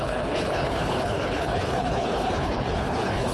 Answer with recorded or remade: remade